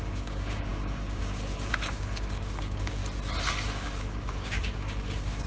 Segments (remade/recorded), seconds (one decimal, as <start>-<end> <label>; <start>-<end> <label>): 0.0-3.0 remade; 3.0-3.7 recorded; 3.7-5.5 remade